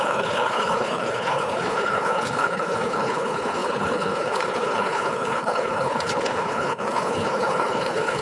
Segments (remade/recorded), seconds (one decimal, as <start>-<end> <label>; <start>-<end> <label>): 0.0-8.2 remade